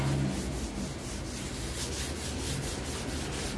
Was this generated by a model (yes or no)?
no